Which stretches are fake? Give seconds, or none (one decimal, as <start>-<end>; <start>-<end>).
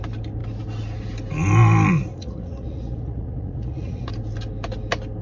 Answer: 2.1-4.1